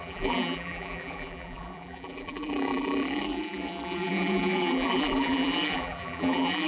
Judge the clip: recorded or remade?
remade